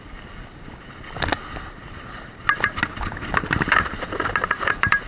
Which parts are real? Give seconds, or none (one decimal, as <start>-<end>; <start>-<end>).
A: 0.0-5.1